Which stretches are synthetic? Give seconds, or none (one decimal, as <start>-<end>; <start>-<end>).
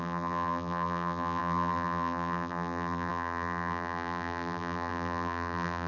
0.0-5.9